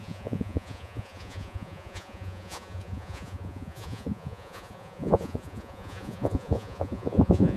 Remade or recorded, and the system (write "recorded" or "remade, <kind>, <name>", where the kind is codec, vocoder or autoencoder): remade, vocoder, Vocos